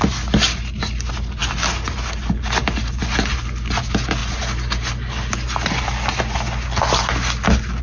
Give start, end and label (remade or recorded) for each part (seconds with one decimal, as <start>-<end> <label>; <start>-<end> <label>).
0.0-7.8 recorded